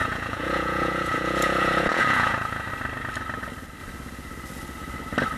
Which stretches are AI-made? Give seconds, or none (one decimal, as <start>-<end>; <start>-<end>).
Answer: 0.0-2.7